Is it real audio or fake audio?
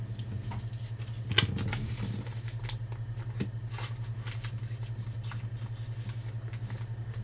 real